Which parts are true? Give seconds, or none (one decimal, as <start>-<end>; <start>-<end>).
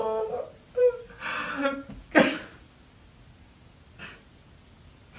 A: 0.0-5.2